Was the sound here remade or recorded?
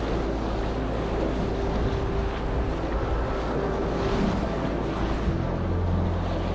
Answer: recorded